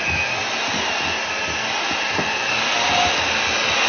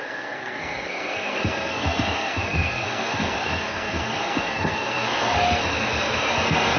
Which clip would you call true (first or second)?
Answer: first